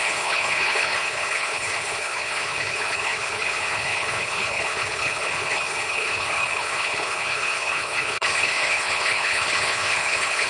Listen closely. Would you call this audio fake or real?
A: fake